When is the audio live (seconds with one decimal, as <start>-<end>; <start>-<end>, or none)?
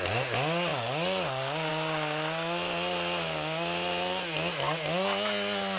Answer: 0.0-5.8